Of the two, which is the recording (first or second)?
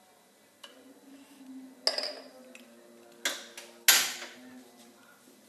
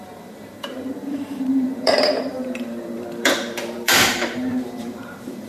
first